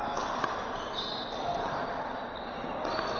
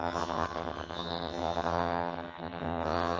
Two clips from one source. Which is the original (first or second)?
first